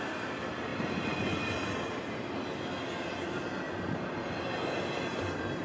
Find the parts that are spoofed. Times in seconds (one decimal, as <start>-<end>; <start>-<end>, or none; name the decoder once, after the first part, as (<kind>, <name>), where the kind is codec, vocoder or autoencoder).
none